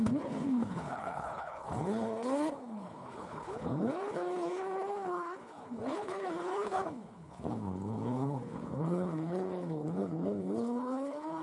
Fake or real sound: fake